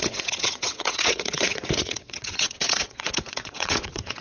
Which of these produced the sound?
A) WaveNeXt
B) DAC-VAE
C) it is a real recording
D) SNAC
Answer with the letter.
A